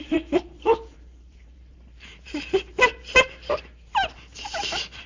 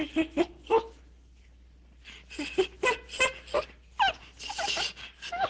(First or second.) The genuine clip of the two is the second